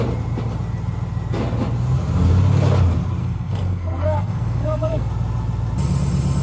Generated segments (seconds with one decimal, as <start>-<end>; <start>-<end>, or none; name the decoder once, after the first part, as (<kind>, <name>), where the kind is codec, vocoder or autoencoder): 3.2-5.1 (codec, SNAC)